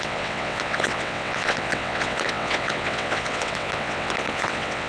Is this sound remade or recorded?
remade